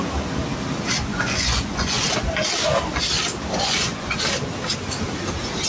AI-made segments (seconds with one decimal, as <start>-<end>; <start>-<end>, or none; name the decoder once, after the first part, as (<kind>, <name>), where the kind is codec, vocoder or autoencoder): 1.1-2.1 (vocoder, Vocos); 3.5-4.2